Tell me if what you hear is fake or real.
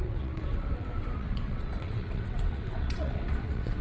fake